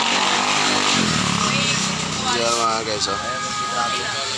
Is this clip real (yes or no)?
yes